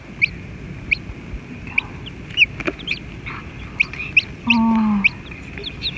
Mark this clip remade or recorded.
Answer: recorded